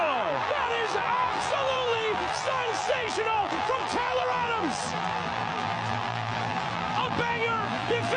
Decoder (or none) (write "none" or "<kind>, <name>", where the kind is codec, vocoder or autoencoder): vocoder, BigVGAN v2